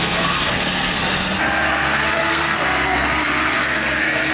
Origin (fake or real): fake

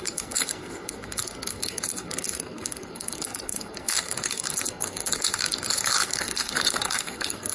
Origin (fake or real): fake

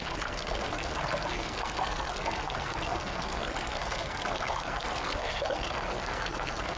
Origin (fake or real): fake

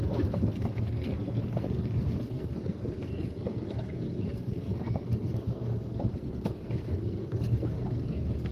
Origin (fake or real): fake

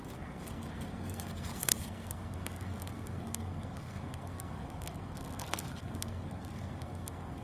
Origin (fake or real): fake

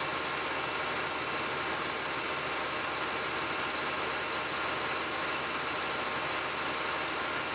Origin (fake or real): real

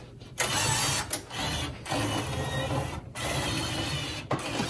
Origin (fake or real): real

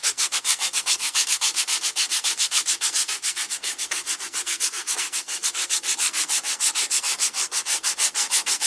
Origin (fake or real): fake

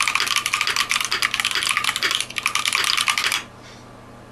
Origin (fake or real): real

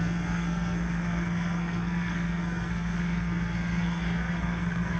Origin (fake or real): fake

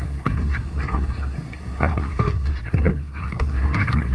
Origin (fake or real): fake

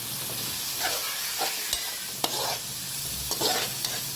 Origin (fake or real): real